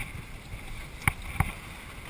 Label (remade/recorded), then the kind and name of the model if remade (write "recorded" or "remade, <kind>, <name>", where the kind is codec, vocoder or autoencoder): recorded